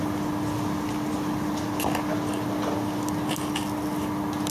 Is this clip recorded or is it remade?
recorded